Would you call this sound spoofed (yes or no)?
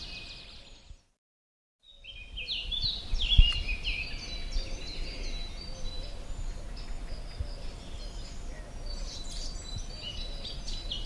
no